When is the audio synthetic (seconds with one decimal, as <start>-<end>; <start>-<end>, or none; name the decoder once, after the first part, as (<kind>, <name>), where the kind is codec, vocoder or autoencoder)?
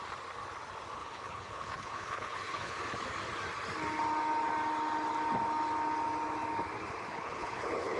1.0-2.8 (codec, HILCodec); 7.1-8.0